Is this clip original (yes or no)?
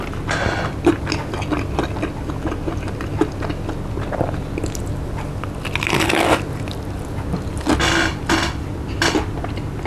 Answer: yes